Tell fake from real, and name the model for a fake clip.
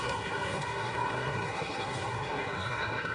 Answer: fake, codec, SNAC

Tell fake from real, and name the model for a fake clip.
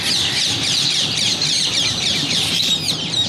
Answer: fake, vocoder, BigVGAN v2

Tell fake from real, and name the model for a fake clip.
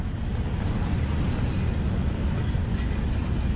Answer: real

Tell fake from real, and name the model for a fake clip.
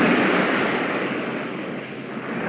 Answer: fake, codec, DAC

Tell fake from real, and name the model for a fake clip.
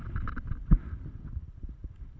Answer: real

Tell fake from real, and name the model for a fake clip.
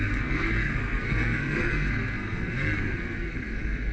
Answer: fake, codec, SNAC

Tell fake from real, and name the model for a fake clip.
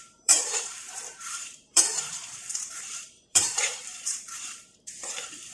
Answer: fake, vocoder, BigVGAN v2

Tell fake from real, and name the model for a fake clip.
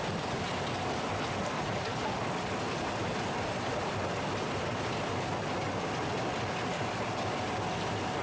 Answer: real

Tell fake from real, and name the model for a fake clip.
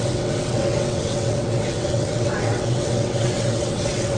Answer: fake, vocoder, WaveNeXt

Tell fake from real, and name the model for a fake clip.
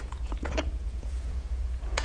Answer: fake, vocoder, Vocos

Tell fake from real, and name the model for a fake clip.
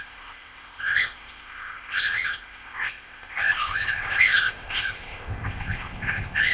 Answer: fake, codec, ZipCodec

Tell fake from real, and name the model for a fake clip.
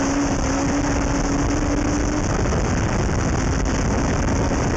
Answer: real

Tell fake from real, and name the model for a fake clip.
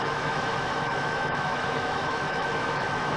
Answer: fake, autoencoder, DAC-VAE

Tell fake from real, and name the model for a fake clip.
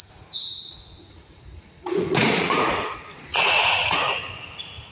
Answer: fake, vocoder, Vocos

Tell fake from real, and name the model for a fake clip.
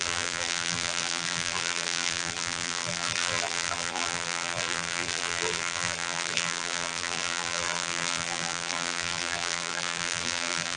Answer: fake, vocoder, BigVGAN v2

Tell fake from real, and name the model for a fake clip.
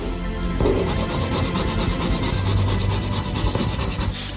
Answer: real